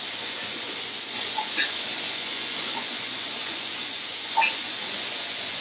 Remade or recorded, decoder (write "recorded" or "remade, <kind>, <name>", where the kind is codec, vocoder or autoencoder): remade, vocoder, Vocos